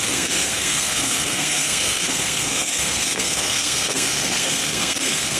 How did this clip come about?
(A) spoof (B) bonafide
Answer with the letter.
A